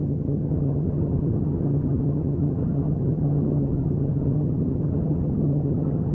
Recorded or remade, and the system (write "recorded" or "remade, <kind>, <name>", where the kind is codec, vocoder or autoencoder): remade, vocoder, HiFi-GAN